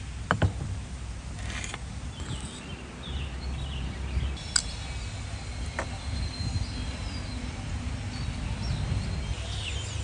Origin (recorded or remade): recorded